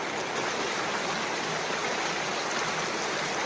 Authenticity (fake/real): real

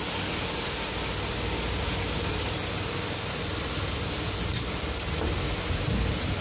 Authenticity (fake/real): real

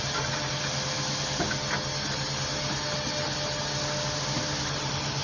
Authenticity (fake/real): real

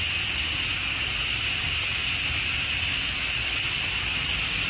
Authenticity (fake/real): real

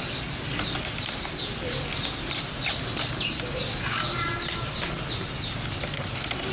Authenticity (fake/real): real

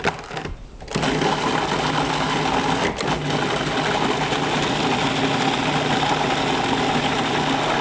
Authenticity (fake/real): real